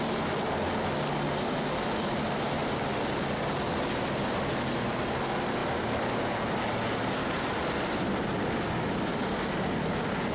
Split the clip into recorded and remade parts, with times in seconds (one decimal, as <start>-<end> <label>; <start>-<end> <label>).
0.0-10.3 recorded